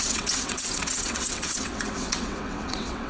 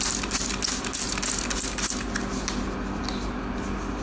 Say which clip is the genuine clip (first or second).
second